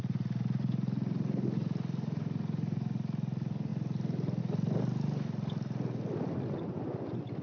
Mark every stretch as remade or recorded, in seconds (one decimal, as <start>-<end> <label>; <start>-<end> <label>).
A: 0.0-7.4 recorded

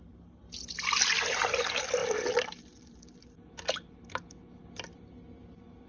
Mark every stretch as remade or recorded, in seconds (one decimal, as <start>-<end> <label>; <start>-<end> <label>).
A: 0.0-1.4 remade; 1.4-2.0 recorded; 2.0-2.6 remade; 2.6-5.9 recorded

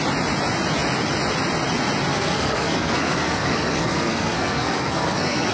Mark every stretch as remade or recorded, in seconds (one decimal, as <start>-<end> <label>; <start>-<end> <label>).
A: 0.0-2.1 recorded; 2.1-5.5 remade

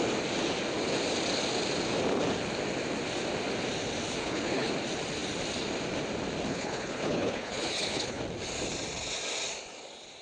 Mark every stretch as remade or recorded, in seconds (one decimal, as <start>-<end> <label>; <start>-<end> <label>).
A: 0.0-4.2 recorded; 4.2-4.7 remade; 4.7-6.5 recorded; 6.5-8.2 remade; 8.2-10.2 recorded

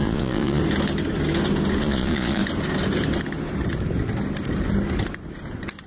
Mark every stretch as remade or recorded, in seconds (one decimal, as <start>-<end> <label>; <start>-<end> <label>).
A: 0.0-0.6 remade; 0.6-1.8 recorded; 1.8-2.4 remade; 2.4-5.9 recorded

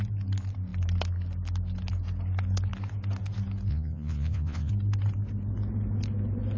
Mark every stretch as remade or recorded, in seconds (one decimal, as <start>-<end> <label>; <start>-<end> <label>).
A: 0.0-3.7 recorded; 3.7-4.7 remade; 4.7-6.6 recorded

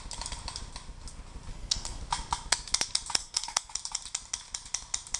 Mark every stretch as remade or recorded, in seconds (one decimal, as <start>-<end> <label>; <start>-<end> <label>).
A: 0.0-1.5 recorded; 1.5-2.0 remade; 2.0-3.2 recorded; 3.2-3.7 remade; 3.7-5.2 recorded

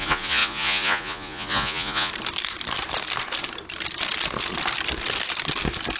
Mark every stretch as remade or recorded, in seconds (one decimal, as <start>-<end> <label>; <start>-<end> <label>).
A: 0.0-2.1 remade; 2.1-6.0 recorded